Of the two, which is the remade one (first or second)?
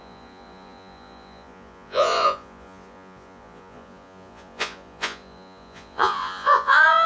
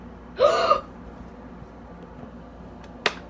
first